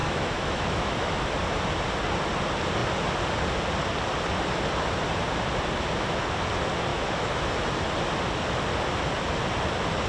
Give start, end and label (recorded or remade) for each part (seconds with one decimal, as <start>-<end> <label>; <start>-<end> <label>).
0.0-1.2 remade; 1.2-6.9 recorded; 6.9-7.5 remade; 7.5-10.1 recorded